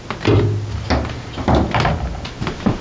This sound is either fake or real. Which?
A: real